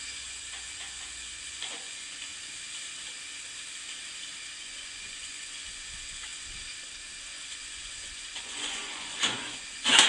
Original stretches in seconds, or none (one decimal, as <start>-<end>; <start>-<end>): 2.3-4.6; 6.3-7.2